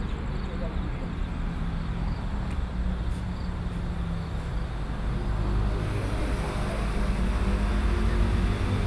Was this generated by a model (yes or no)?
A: no